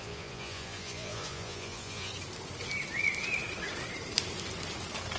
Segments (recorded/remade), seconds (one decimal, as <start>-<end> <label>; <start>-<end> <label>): 0.0-2.1 remade; 2.1-5.2 recorded